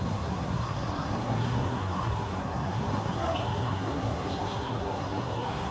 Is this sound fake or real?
fake